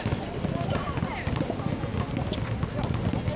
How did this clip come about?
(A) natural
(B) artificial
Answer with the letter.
A